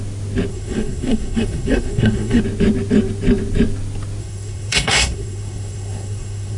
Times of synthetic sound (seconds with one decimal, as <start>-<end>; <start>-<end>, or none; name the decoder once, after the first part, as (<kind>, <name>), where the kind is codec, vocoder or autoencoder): 0.5-2.4 (codec, SNAC); 4.2-6.6